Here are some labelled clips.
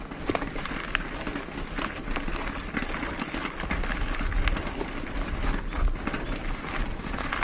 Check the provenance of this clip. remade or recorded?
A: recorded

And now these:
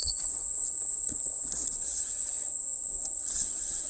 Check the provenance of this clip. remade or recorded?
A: remade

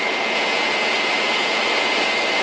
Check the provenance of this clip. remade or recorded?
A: remade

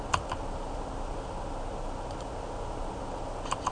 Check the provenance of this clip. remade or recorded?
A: recorded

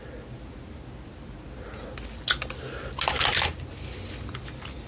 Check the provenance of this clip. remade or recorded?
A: recorded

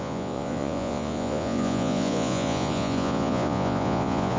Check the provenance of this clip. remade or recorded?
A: remade